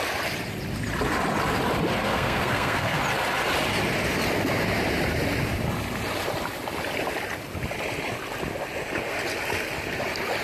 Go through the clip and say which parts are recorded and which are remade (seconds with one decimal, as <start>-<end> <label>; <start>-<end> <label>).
0.0-2.1 recorded; 2.1-3.0 remade; 3.0-10.4 recorded